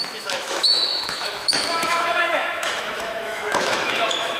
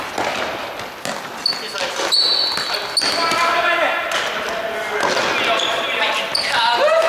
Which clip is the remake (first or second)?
first